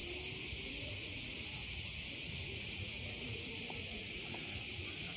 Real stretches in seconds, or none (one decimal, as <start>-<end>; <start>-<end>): 0.0-0.5